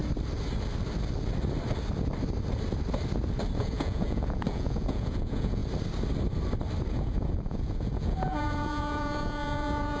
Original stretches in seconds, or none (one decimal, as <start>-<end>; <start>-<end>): 0.0-3.6; 5.6-6.9